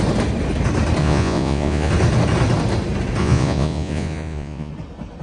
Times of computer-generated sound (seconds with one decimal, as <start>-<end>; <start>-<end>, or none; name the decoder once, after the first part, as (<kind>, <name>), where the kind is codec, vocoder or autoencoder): 1.0-1.9 (vocoder, Vocos); 3.2-4.7